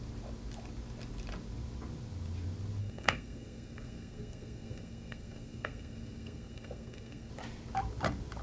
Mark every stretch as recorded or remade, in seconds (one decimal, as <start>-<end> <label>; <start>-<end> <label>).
0.0-2.8 recorded; 2.8-7.3 remade; 7.3-8.4 recorded